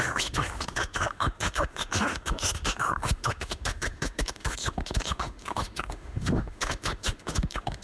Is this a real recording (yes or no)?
no